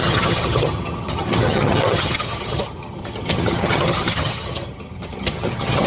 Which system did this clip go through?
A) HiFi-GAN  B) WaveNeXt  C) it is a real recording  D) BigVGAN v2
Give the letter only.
A